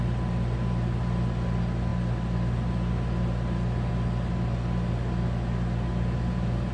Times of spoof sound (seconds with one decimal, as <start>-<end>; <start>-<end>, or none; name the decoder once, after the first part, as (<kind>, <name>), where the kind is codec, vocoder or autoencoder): none